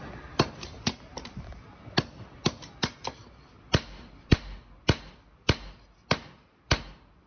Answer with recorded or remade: recorded